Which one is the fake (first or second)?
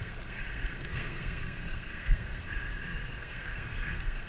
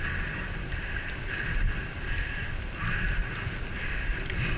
first